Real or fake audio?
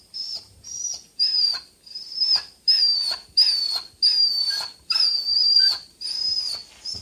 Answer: real